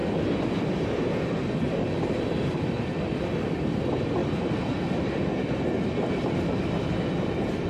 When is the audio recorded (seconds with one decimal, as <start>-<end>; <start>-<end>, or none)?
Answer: 1.8-4.2; 5.2-7.7